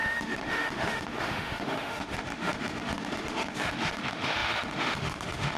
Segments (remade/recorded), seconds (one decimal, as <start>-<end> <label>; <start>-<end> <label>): 0.0-5.6 remade